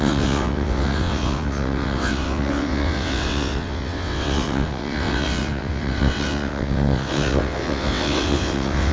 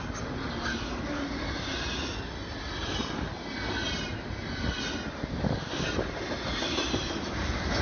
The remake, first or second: first